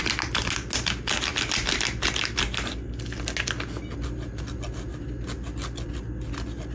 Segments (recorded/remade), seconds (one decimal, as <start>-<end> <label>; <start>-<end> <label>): 0.0-6.7 recorded